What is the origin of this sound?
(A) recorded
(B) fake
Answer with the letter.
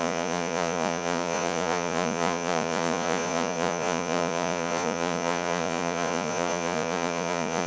B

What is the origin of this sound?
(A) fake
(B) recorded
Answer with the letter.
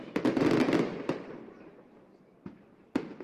B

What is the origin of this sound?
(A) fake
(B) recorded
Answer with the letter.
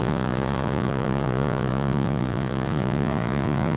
A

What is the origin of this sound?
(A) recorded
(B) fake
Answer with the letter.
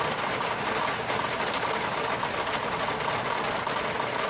A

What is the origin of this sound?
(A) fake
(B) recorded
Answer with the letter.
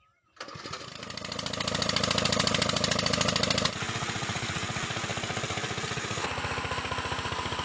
B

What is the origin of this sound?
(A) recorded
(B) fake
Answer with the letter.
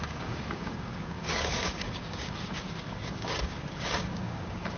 B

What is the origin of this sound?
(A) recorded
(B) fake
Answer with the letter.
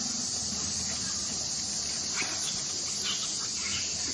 A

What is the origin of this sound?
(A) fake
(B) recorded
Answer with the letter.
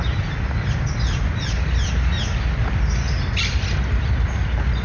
B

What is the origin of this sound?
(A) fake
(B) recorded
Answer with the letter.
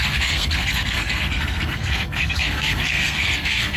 A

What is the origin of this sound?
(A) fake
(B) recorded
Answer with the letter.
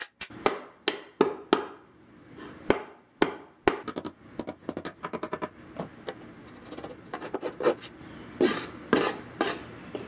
B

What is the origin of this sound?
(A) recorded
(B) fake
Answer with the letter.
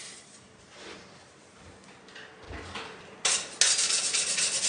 A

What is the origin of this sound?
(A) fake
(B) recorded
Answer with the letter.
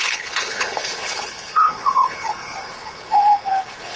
A